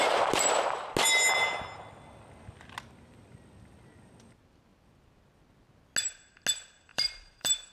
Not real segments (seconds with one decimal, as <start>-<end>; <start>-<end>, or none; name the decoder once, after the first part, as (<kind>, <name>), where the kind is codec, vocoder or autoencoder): 6.9-7.7 (vocoder, BigVGAN v2)